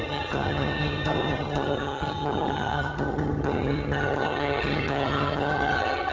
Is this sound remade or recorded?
remade